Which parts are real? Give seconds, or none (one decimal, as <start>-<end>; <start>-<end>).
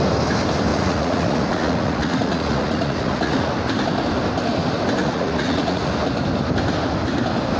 0.0-0.7; 3.5-5.0; 5.9-7.6